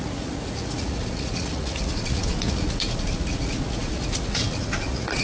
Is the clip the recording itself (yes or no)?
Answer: no